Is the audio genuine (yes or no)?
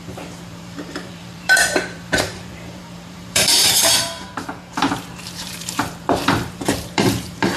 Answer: no